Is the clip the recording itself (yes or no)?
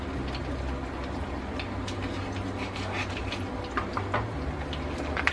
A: yes